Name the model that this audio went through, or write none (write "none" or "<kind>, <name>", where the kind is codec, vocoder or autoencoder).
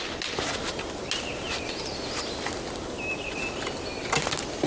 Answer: none